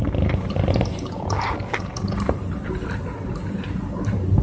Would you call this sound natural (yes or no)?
yes